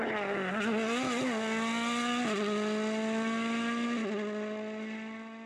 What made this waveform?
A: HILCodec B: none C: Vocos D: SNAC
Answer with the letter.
B